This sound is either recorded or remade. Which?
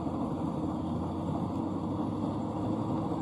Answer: recorded